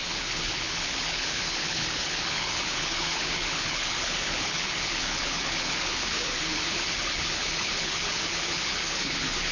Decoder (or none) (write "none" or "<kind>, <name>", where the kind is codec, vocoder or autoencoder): codec, HILCodec